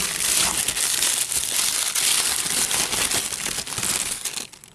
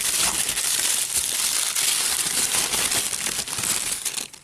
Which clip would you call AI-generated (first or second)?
second